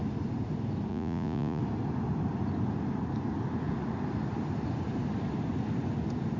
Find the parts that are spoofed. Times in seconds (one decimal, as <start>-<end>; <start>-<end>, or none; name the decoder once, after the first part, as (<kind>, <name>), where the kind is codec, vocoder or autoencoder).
0.9-1.6 (vocoder, Vocos)